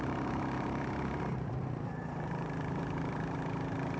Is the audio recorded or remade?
remade